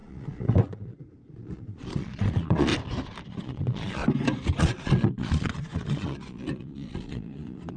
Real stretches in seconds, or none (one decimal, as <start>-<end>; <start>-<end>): 2.7-3.3; 4.0-4.6